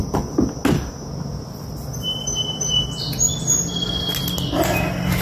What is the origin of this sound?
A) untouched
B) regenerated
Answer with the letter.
A